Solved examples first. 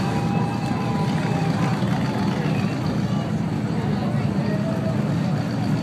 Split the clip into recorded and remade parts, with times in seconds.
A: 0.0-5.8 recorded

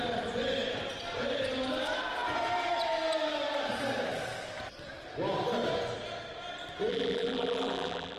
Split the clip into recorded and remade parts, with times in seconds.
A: 0.0-6.9 recorded; 6.9-8.2 remade

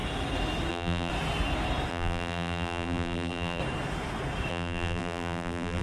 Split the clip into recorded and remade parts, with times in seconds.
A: 0.0-0.7 recorded; 0.7-1.1 remade; 1.1-1.9 recorded; 1.9-3.6 remade; 3.6-4.5 recorded; 4.5-5.8 remade